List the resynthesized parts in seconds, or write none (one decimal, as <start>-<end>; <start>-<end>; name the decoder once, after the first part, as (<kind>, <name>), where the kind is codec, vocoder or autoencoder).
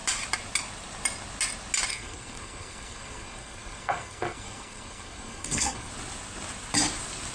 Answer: 1.9-5.9 (codec, SNAC)